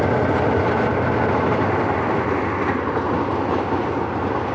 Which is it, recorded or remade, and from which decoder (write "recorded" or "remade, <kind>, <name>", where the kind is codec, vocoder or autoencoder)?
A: recorded